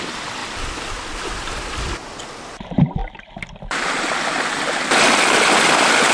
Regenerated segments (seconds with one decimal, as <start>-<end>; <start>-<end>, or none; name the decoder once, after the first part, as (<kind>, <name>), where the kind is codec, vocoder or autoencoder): 0.0-3.0 (vocoder, BigVGAN v2)